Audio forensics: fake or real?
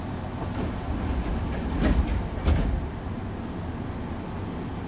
real